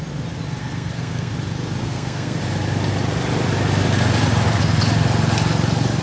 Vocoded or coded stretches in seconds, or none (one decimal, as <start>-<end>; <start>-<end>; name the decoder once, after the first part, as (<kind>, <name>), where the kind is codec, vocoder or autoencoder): 0.6-1.3 (codec, SNAC); 1.8-2.4